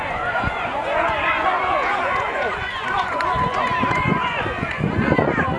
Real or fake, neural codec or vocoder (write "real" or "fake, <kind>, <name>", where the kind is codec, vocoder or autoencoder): fake, vocoder, Vocos